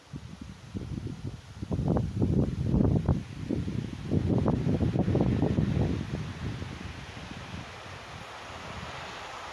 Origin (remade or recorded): recorded